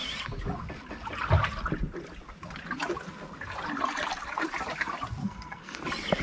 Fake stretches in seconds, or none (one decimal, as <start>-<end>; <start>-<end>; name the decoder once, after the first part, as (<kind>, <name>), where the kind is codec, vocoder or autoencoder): 5.2-5.8 (codec, SNAC)